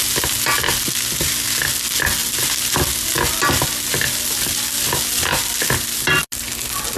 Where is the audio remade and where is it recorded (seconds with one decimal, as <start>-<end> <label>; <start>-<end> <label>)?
0.0-7.0 recorded